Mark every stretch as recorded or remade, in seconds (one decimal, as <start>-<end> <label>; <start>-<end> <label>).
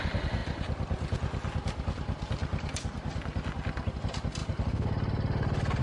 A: 0.0-5.8 recorded